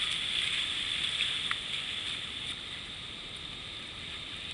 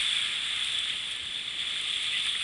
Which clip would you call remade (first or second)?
first